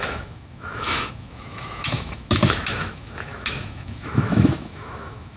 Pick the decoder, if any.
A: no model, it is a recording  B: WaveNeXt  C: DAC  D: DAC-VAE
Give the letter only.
D